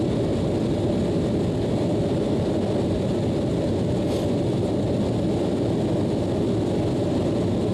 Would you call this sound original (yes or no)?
yes